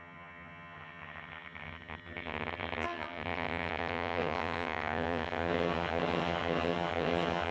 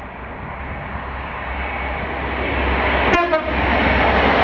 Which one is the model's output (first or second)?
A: first